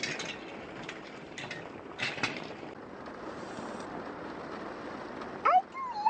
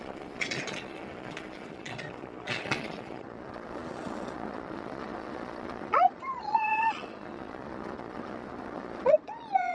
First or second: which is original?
first